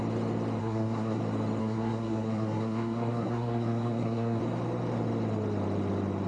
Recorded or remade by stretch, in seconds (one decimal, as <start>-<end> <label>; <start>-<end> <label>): 0.0-0.6 recorded; 0.6-1.2 remade; 1.2-1.6 recorded; 1.6-4.4 remade; 4.4-6.3 recorded